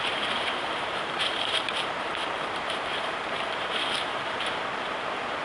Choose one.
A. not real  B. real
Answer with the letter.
A